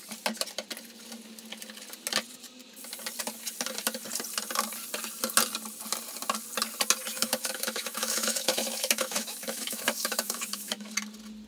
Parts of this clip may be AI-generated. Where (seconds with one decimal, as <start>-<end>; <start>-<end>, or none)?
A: 7.1-10.9